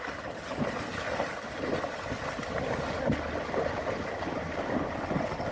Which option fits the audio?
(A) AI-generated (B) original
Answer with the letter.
B